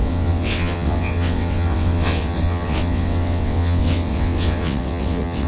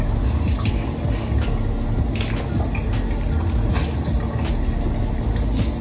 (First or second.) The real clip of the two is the second